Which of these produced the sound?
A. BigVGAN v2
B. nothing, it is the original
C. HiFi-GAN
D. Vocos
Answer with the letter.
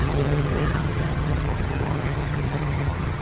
C